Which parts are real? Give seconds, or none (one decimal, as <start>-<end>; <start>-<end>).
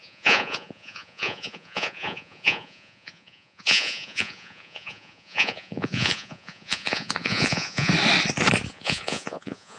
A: 7.9-8.7